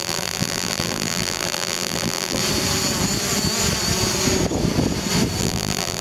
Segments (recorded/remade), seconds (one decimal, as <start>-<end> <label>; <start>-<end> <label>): 0.0-2.4 remade; 2.4-5.4 recorded; 5.4-6.0 remade